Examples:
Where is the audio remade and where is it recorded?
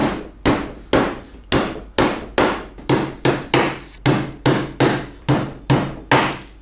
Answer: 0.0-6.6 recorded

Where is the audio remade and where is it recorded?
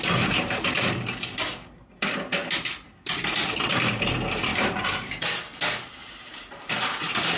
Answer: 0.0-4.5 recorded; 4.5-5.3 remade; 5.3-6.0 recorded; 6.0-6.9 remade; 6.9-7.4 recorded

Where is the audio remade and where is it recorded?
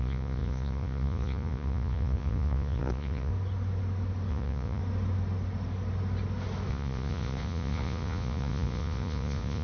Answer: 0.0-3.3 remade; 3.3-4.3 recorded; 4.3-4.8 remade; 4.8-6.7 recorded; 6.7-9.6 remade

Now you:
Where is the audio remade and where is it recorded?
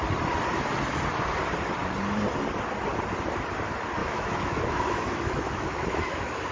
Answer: 0.0-4.0 recorded; 4.0-6.5 remade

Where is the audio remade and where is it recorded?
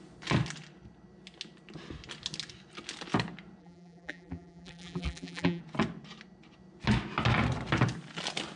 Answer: 0.0-3.6 recorded; 3.6-5.6 remade; 5.6-8.6 recorded